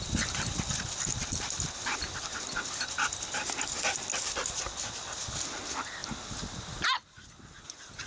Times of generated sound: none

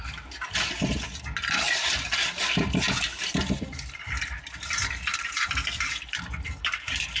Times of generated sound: none

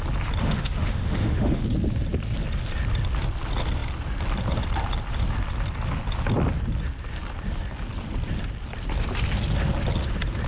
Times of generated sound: 0.4-1.6 (autoencoder, DAC-VAE)